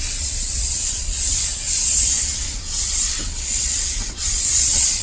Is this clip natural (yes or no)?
no